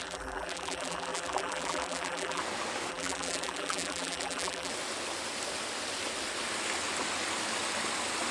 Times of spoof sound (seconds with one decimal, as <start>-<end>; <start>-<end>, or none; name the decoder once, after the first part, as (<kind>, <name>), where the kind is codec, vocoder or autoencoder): 0.0-2.4 (vocoder, BigVGAN v2); 2.9-4.7